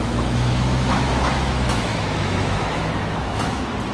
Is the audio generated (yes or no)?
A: yes